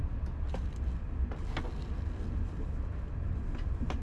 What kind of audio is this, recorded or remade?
recorded